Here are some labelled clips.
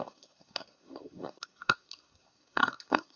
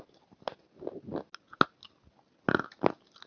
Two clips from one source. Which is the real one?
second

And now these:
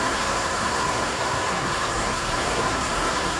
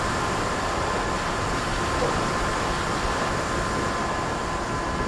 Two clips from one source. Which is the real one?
second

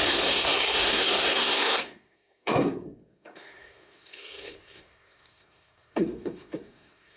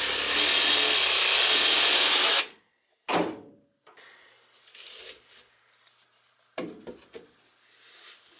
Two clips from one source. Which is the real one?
second